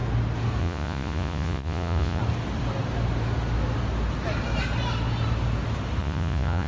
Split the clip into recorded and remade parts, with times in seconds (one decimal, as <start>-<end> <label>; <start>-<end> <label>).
0.0-0.6 recorded; 0.6-2.2 remade; 2.2-6.0 recorded; 6.0-6.7 remade